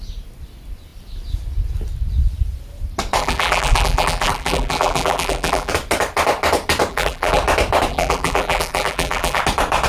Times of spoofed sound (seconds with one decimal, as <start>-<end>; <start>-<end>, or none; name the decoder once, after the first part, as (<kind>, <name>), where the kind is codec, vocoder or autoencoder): 3.2-5.7 (vocoder, BigVGAN v2); 6.9-7.4; 7.9-9.4